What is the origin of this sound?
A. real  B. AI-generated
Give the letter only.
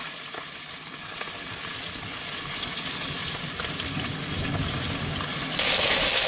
A